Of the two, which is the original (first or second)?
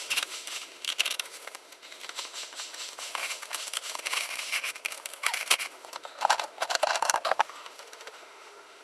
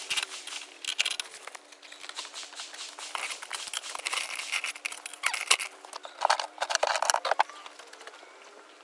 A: second